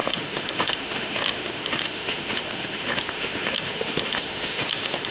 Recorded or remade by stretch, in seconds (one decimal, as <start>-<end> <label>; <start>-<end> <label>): 0.0-5.1 remade